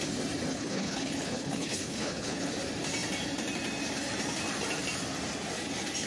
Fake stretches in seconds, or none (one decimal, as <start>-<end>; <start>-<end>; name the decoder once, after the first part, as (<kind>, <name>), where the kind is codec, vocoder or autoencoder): 0.5-2.5 (codec, HILCodec)